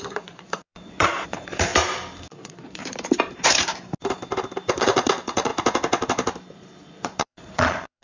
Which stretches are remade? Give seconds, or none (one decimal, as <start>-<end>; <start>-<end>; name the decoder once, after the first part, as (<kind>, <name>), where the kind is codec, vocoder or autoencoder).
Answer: 0.0-1.7 (vocoder, Vocos); 2.3-2.8; 4.7-5.5; 6.5-8.0